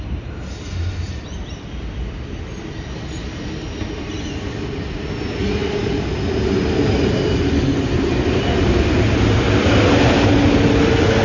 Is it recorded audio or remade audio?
recorded